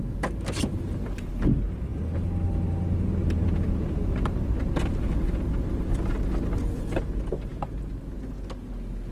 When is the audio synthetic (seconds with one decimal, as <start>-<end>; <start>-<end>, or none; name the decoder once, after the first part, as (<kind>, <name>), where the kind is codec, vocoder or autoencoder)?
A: none